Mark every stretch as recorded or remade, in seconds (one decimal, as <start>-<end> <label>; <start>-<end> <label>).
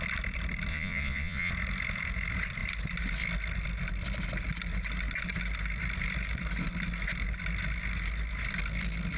0.0-0.7 recorded; 0.7-1.5 remade; 1.5-9.2 recorded